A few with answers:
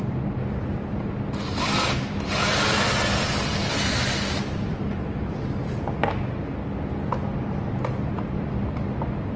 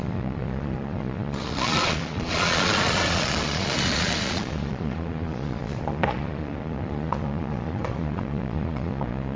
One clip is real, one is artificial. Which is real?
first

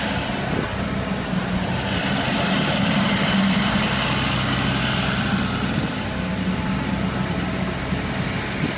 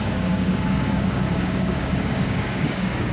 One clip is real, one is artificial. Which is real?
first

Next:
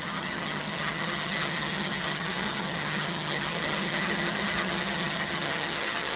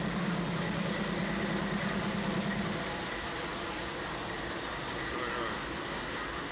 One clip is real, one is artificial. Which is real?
second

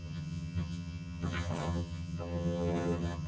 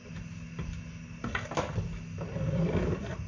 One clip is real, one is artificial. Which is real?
second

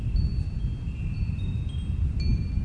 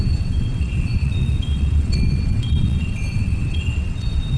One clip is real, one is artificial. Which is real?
first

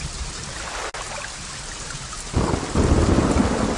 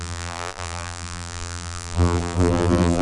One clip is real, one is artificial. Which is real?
first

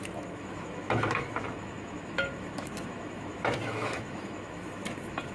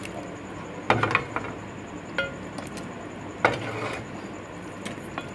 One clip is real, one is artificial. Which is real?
second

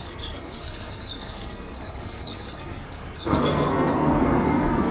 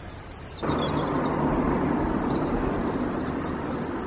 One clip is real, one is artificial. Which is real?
second